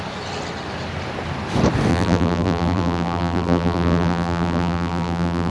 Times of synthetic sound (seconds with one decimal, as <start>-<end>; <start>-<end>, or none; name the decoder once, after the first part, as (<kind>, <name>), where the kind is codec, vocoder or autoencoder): 1.9-5.5 (vocoder, BigVGAN v2)